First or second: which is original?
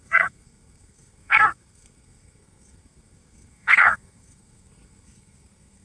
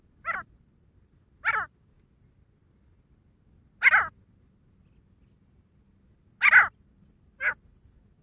second